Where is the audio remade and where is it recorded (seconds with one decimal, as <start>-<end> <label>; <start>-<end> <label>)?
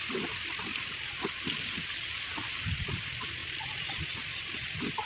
0.0-5.1 recorded